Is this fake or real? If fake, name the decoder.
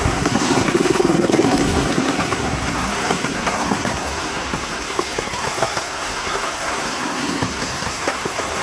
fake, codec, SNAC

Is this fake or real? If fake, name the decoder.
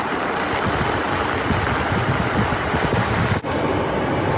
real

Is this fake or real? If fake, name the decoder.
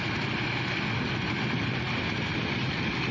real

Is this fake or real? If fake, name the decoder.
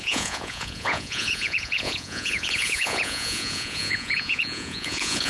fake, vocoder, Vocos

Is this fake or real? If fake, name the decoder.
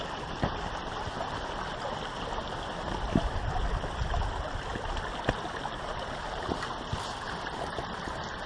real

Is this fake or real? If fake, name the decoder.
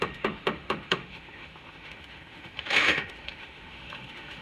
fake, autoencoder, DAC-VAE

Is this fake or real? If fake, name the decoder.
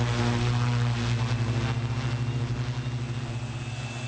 real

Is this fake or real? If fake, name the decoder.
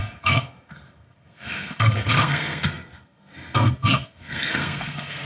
fake, codec, SNAC